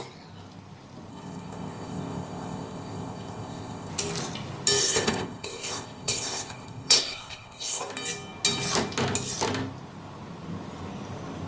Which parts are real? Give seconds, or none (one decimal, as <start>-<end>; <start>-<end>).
0.0-1.1; 3.9-4.8; 7.8-11.5

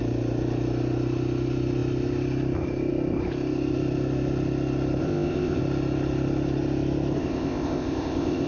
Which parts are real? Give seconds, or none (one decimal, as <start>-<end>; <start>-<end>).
0.0-5.0; 5.6-7.2

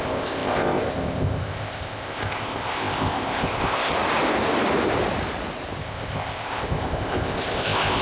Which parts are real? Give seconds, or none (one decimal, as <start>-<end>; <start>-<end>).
3.9-5.8

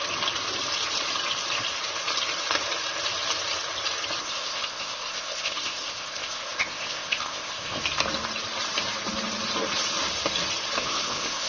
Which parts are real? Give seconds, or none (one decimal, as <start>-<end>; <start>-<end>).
0.0-4.2; 7.8-10.8